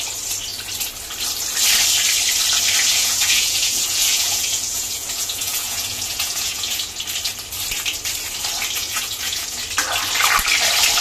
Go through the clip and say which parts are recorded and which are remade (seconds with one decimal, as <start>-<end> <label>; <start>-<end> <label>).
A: 0.0-2.9 recorded; 2.9-7.0 remade; 7.0-8.8 recorded; 8.8-9.6 remade; 9.6-11.0 recorded